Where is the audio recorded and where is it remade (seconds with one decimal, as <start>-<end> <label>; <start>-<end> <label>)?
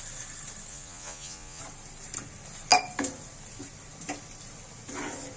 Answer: 0.0-0.7 recorded; 0.7-1.6 remade; 1.6-5.4 recorded